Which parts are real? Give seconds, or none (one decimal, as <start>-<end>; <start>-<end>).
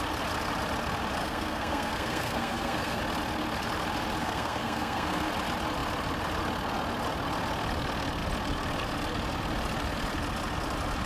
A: 0.0-1.2; 3.0-4.2; 5.3-11.1